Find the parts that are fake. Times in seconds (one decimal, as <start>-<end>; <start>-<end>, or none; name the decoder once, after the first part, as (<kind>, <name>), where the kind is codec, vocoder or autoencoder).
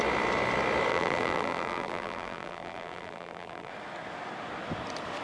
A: 0.9-3.7 (vocoder, BigVGAN v2)